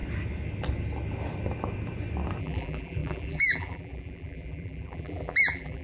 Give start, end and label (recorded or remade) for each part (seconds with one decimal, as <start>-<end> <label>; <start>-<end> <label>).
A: 0.0-2.4 recorded; 2.4-5.8 remade